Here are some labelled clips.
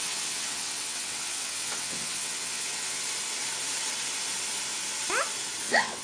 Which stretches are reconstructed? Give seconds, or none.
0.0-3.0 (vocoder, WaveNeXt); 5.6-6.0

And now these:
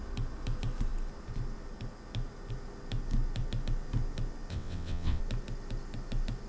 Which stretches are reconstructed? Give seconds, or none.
4.5-5.2 (vocoder, WaveNeXt)

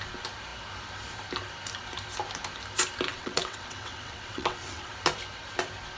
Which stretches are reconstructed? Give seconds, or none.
3.1-4.9 (vocoder, WaveNeXt)